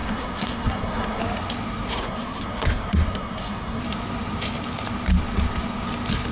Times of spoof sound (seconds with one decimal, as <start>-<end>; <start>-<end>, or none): 0.0-1.2; 1.9-3.8